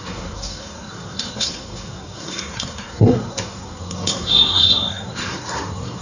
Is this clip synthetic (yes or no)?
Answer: yes